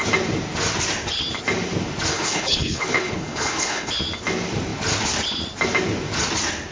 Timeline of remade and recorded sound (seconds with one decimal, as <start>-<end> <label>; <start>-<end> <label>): 0.0-2.1 recorded; 2.1-3.9 remade; 3.9-6.7 recorded